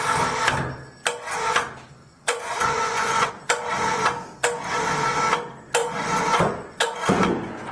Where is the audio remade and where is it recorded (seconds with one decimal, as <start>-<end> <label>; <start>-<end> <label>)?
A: 0.0-2.0 recorded; 2.0-3.3 remade; 3.3-5.8 recorded; 5.8-7.7 remade